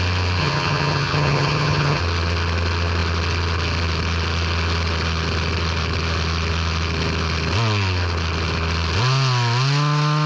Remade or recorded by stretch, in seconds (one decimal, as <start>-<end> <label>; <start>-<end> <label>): 0.0-0.4 recorded; 0.4-2.0 remade; 2.0-10.3 recorded